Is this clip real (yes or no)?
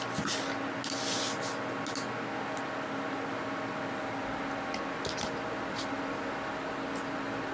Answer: yes